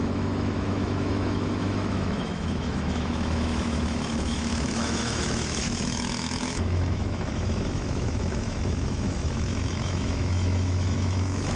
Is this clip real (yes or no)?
no